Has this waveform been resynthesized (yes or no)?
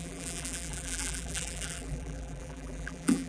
yes